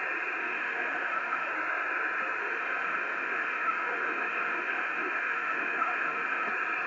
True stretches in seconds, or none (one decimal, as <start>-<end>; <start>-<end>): 0.0-0.4; 1.5-2.4; 6.5-6.9